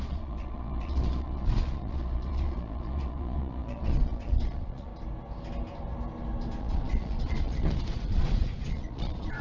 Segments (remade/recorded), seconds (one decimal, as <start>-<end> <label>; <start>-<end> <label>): 0.0-4.9 remade; 4.9-6.6 recorded; 6.6-9.4 remade